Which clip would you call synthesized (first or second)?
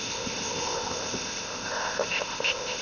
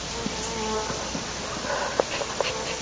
first